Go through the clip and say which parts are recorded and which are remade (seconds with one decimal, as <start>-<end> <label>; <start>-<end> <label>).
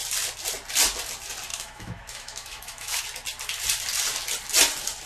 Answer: 0.0-1.5 recorded; 1.5-3.0 remade; 3.0-5.1 recorded